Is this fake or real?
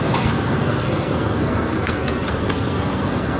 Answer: fake